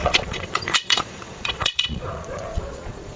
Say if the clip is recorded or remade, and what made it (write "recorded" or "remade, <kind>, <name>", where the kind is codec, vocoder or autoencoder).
remade, vocoder, Vocos